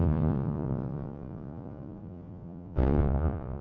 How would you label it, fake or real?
fake